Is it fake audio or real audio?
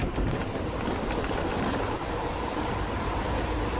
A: real